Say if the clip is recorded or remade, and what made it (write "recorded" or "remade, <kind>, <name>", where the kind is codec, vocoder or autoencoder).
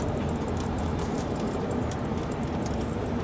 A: remade, vocoder, BigVGAN v2